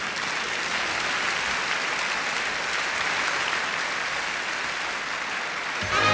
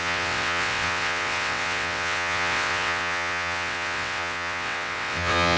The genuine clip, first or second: first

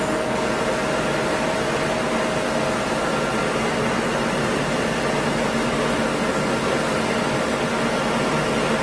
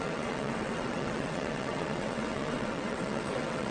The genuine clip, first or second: first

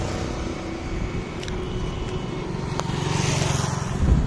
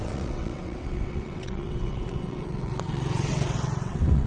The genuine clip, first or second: first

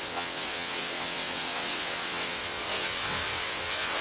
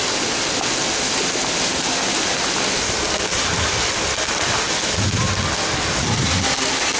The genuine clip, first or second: second